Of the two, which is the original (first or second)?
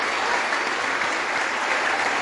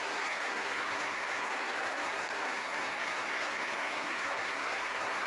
first